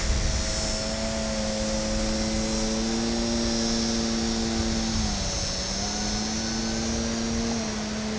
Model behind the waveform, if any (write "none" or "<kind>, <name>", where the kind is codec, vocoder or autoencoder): none